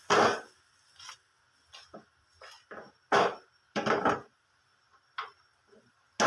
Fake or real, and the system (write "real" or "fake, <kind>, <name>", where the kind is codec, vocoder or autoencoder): real